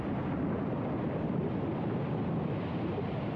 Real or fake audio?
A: real